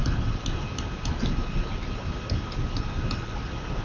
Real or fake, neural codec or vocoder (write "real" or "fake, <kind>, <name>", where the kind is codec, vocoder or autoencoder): real